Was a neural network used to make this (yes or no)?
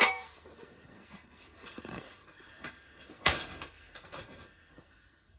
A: yes